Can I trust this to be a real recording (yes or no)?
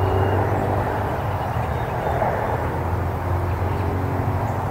yes